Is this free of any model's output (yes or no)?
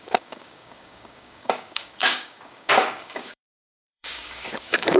no